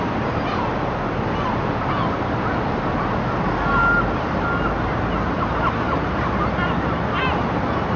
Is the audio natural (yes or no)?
yes